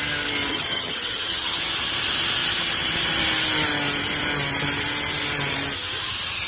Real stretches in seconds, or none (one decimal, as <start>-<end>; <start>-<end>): 0.0-0.5; 1.6-6.5